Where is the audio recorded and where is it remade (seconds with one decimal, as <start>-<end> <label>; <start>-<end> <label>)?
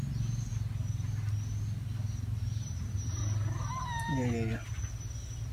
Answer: 0.0-2.4 recorded; 2.4-3.2 remade; 3.2-5.5 recorded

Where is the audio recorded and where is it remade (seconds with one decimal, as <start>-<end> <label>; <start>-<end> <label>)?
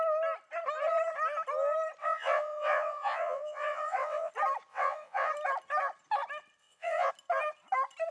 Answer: 0.0-2.0 recorded; 2.0-4.3 remade; 4.3-4.7 recorded; 4.7-5.3 remade; 5.3-6.6 recorded; 6.6-7.1 remade; 7.1-8.1 recorded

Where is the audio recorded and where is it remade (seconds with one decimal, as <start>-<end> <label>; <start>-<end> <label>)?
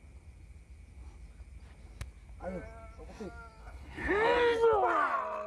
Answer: 0.0-3.6 recorded; 3.6-4.1 remade; 4.1-5.5 recorded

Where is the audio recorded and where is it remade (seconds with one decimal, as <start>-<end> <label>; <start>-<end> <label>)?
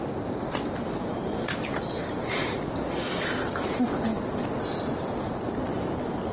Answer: 0.0-6.3 recorded